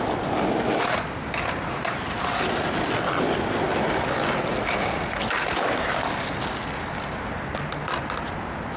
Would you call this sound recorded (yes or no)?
yes